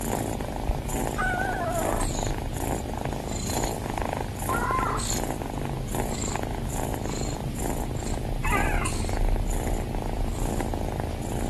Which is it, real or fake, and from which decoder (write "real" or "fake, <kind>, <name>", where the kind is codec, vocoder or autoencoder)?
real